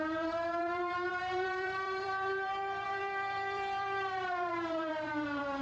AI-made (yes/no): yes